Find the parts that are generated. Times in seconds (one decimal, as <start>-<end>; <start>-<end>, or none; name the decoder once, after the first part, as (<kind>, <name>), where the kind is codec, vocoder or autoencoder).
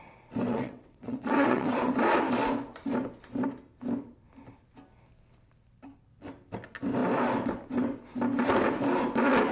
0.5-1.9 (vocoder, WaveNeXt)